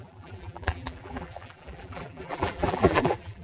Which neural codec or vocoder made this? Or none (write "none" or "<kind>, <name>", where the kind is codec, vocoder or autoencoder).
vocoder, BigVGAN v2